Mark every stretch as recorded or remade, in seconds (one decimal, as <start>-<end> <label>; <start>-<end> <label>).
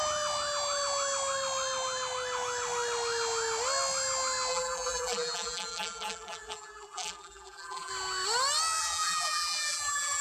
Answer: 0.0-4.5 recorded; 4.5-7.9 remade; 7.9-8.8 recorded; 8.8-10.2 remade